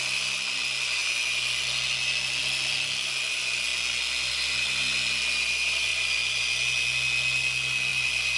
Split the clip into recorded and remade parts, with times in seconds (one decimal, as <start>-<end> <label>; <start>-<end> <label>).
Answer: 0.0-5.9 recorded; 5.9-6.4 remade; 6.4-7.9 recorded; 7.9-8.4 remade